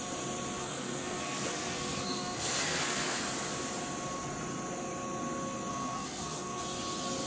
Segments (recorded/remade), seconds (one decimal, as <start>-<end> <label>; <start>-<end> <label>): 0.0-0.6 recorded; 0.6-3.2 remade; 3.2-5.7 recorded; 5.7-6.6 remade; 6.6-7.3 recorded